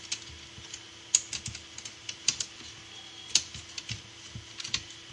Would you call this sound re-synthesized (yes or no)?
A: no